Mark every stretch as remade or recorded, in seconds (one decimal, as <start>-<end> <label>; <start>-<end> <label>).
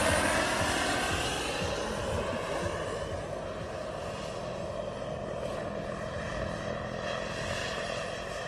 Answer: 0.0-5.5 recorded; 5.5-6.3 remade; 6.3-7.6 recorded; 7.6-8.5 remade